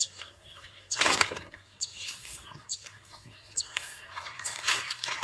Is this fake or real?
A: fake